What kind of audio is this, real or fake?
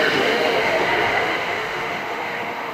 fake